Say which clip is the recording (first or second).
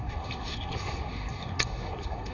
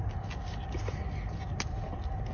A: second